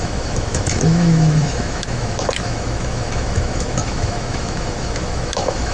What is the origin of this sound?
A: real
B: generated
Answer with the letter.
B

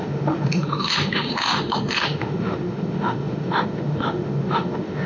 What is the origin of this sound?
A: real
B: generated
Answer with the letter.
B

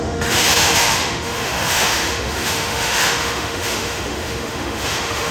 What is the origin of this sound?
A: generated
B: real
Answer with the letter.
A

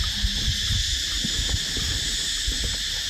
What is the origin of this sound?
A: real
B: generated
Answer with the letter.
A